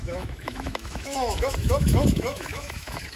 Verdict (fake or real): fake